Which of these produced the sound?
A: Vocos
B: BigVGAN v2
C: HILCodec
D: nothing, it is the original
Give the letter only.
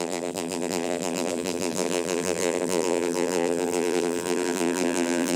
B